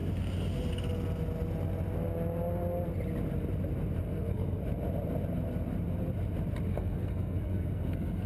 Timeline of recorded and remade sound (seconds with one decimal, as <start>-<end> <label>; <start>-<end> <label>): 0.0-4.0 recorded; 4.0-4.6 remade; 4.6-6.7 recorded; 6.7-8.3 remade